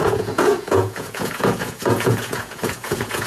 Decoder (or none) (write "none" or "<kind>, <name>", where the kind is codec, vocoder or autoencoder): vocoder, Vocos